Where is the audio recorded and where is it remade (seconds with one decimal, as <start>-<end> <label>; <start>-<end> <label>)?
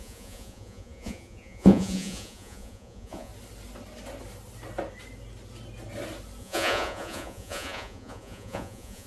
0.0-3.3 remade; 3.3-6.4 recorded; 6.4-9.1 remade